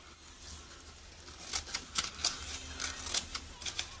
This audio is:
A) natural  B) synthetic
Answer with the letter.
A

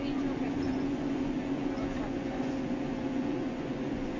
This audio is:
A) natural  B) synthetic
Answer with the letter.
B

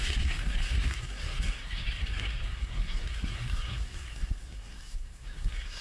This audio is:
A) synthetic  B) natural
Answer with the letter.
A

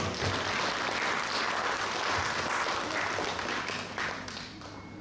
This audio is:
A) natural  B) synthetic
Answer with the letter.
A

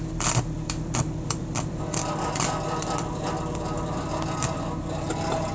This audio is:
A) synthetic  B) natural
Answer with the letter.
A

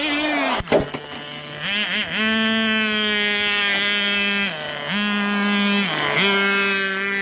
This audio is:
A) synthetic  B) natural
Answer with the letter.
B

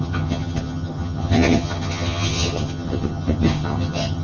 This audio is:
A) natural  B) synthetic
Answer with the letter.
B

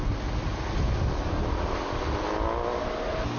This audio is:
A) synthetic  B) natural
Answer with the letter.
B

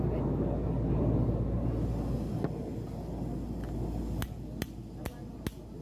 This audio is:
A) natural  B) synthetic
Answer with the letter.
A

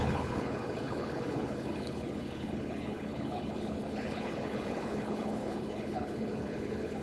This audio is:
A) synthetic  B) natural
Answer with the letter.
A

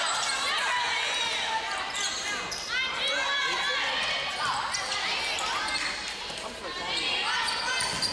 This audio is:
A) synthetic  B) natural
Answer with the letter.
B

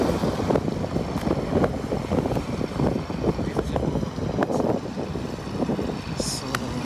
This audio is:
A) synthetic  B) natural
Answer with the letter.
B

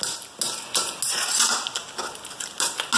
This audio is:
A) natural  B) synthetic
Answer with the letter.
A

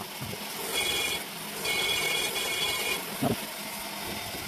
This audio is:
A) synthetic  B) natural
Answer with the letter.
B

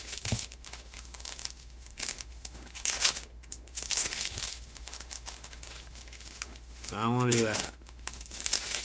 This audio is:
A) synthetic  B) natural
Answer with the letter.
A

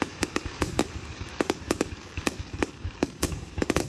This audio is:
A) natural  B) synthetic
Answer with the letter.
B